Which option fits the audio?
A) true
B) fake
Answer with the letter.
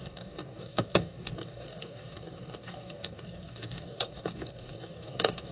B